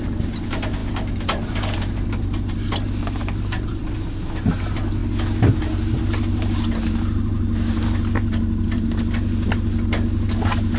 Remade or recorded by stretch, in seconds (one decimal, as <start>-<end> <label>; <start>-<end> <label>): 0.0-10.8 remade